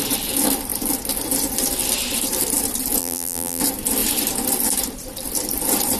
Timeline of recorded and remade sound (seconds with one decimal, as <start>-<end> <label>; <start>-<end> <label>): 0.0-3.0 recorded; 3.0-3.6 remade; 3.6-6.0 recorded